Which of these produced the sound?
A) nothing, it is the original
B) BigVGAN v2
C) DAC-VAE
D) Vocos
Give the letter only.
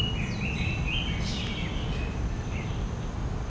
A